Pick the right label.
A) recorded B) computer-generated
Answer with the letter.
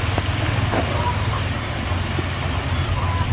A